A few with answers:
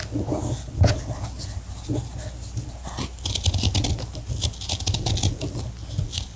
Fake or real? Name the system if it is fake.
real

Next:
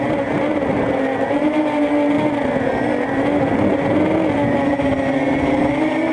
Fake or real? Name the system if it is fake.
real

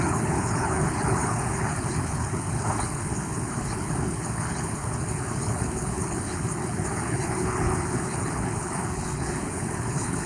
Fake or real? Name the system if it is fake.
fake, codec, HILCodec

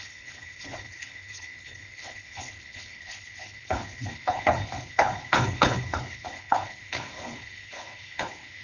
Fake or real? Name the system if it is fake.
fake, codec, HILCodec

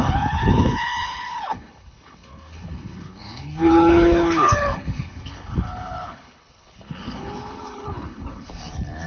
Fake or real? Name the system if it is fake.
fake, codec, HILCodec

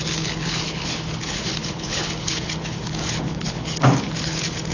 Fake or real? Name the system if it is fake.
fake, codec, HILCodec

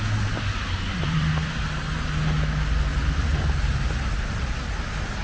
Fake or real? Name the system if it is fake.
real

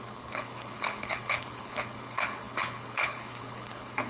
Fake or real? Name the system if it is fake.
fake, codec, HILCodec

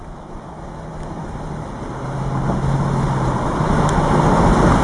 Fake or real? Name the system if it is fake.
real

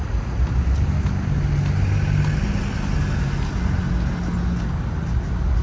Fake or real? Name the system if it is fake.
real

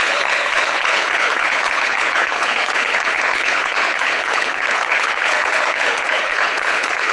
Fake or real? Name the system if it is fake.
fake, codec, HILCodec